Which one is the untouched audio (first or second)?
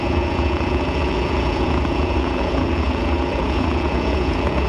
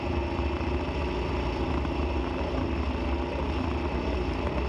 second